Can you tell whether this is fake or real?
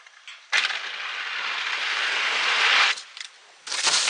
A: real